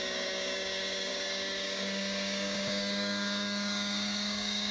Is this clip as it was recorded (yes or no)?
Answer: no